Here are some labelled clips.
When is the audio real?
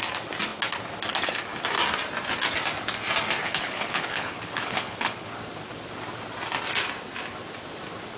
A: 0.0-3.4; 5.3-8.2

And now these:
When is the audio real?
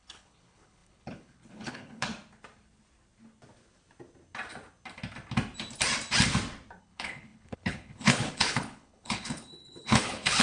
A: 2.1-6.8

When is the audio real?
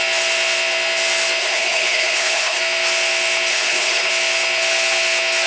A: 0.0-1.4; 2.6-3.5; 4.1-5.5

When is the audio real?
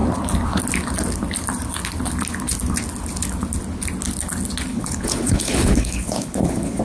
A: 0.0-4.7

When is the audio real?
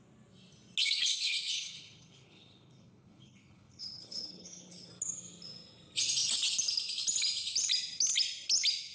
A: 0.0-0.8; 4.9-8.9